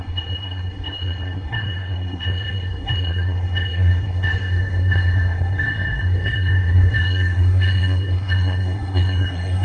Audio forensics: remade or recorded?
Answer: remade